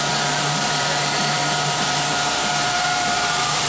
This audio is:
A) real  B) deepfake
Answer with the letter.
B